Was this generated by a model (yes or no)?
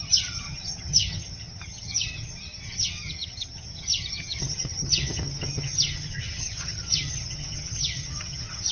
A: yes